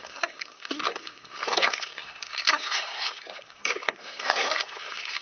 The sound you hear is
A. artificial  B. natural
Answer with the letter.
A